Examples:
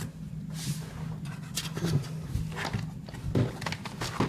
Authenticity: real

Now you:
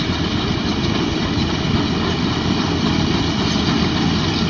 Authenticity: real